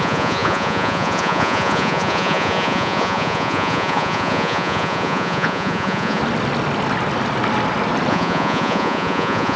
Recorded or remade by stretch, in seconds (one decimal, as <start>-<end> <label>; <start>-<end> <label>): 0.0-6.2 remade; 6.2-8.1 recorded; 8.1-9.6 remade